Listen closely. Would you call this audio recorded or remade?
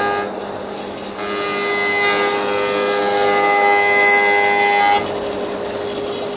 recorded